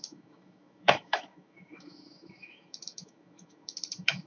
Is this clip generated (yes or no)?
yes